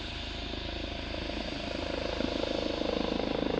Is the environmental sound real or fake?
real